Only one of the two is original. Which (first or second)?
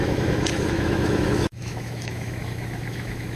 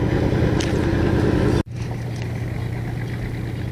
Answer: second